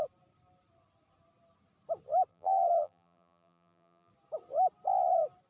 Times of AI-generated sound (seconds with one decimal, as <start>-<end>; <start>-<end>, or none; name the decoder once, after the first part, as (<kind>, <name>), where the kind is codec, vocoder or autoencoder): 2.3-4.1 (vocoder, BigVGAN v2)